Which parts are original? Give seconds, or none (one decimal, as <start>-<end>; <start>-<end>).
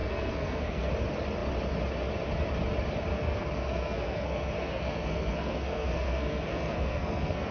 0.9-3.1